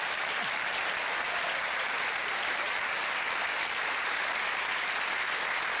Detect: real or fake fake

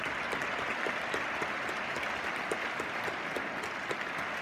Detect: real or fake real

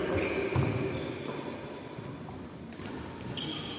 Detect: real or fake real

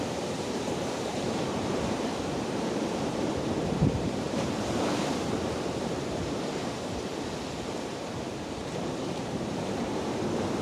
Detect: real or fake fake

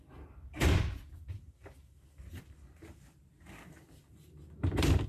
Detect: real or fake fake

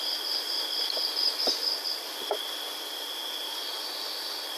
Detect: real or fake real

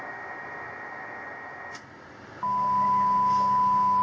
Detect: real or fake real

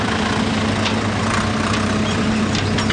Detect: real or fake fake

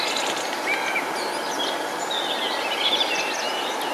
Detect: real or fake real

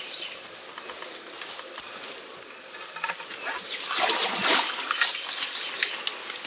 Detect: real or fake real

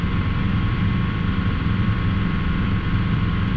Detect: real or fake fake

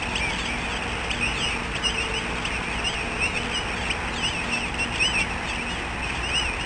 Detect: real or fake real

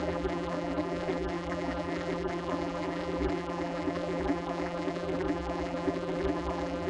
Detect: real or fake fake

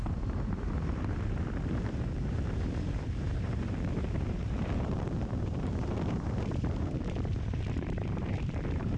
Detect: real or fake fake